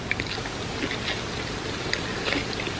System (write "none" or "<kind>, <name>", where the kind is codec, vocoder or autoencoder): none